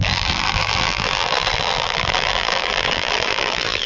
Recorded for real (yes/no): no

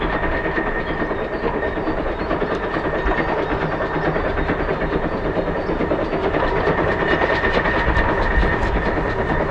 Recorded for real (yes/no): yes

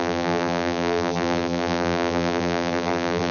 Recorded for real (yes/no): no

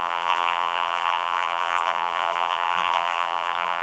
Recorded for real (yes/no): no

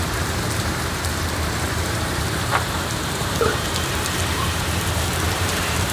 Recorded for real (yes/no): no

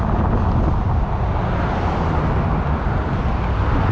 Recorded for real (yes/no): yes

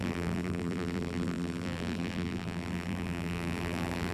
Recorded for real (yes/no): no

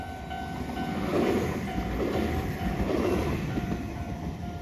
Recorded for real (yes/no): no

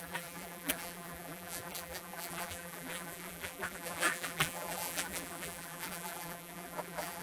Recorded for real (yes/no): no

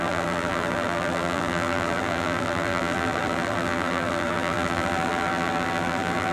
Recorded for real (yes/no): no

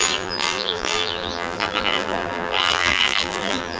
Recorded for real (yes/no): no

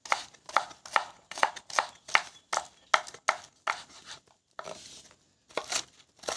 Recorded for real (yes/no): yes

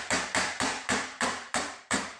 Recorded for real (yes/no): no